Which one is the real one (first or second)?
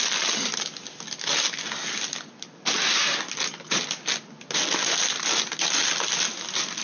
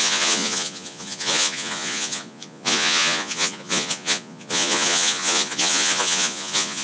first